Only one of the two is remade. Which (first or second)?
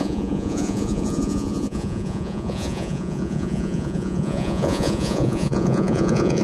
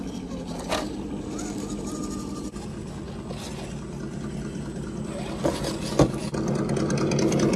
first